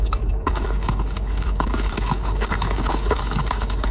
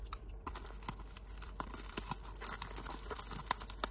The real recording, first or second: second